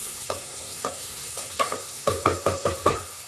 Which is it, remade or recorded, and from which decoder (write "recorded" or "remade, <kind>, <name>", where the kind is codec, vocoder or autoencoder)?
remade, codec, SNAC